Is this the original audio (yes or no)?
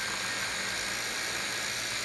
yes